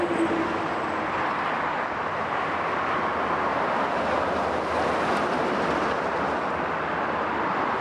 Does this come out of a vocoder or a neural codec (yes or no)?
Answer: no